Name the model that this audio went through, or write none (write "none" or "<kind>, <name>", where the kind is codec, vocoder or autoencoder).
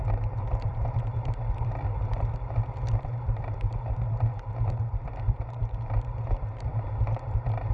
vocoder, BigVGAN v2